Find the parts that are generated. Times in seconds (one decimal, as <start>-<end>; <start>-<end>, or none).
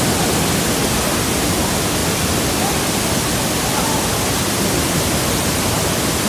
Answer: 2.0-5.8